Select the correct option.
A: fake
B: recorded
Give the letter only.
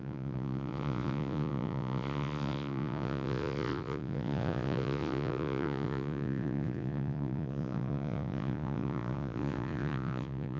A